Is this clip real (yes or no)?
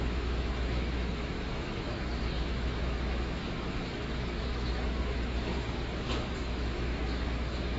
no